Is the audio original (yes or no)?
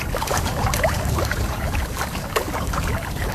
no